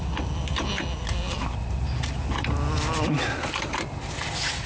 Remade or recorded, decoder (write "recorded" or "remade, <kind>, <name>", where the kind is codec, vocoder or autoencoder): recorded